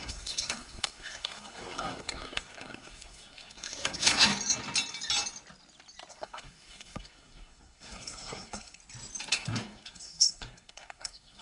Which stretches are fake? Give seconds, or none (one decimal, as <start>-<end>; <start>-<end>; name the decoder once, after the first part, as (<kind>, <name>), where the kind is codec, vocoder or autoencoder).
0.0-4.3 (codec, SNAC); 6.1-8.8; 9.3-11.4